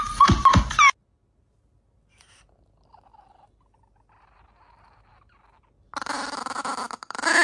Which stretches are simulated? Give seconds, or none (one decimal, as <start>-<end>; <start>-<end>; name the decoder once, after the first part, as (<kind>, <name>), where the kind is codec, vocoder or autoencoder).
none